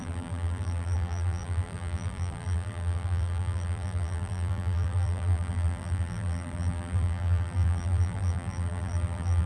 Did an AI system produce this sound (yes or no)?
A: yes